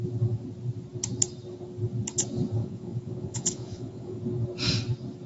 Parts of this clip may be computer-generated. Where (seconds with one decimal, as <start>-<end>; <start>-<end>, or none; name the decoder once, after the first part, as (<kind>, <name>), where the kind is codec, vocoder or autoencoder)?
2.6-4.2 (vocoder, Vocos)